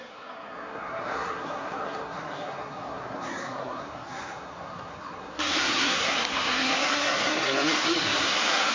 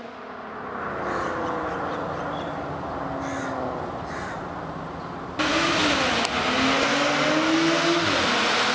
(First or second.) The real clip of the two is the second